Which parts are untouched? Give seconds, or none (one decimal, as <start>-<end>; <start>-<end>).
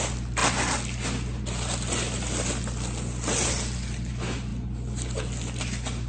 0.0-6.1